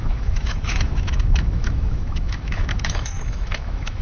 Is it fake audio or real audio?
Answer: fake